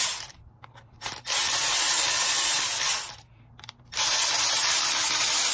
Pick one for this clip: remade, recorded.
recorded